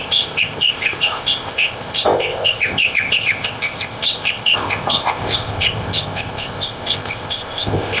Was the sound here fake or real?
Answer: fake